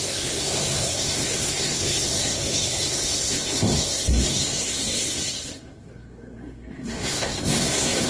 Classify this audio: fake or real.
fake